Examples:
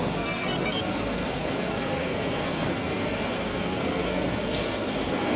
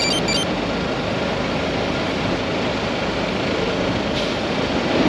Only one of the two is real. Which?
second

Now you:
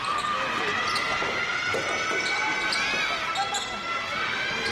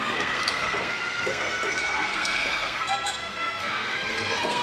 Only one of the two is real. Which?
first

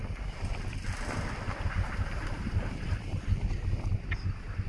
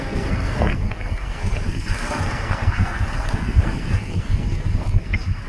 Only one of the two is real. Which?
first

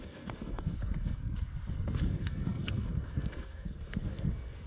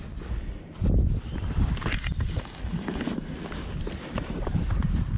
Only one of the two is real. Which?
second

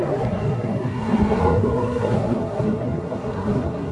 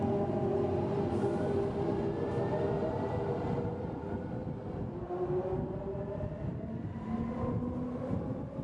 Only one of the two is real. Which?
second